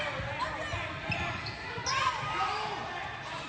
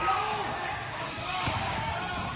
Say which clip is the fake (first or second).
second